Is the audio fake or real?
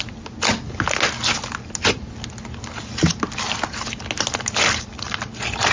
real